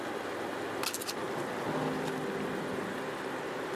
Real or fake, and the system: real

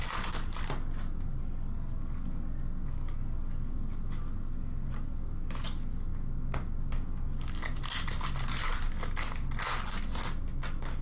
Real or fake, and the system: real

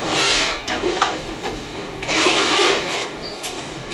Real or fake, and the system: fake, codec, DAC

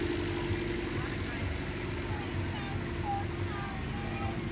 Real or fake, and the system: real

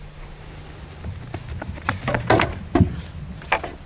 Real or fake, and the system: real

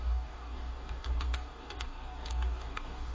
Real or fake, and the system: fake, codec, DAC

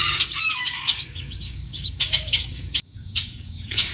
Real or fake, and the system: fake, codec, DAC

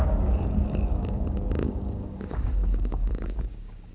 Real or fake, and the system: fake, codec, DAC